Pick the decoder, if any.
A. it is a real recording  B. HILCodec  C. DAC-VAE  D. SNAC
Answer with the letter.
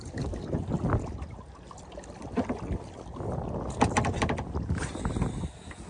A